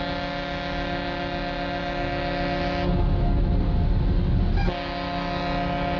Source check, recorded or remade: recorded